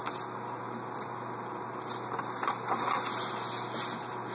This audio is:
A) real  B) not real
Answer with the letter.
A